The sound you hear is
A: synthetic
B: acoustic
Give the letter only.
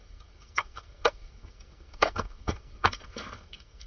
A